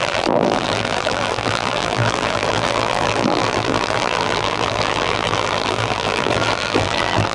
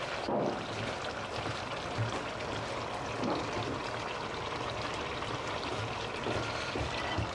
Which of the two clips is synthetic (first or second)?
first